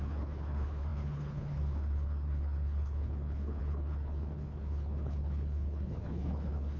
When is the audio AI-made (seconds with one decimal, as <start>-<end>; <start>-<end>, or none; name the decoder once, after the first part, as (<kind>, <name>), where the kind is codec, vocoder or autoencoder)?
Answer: 0.0-6.8 (codec, HILCodec)